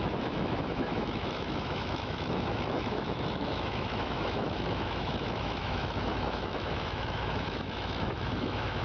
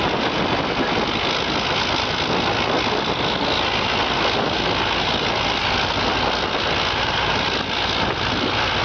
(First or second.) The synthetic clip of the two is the first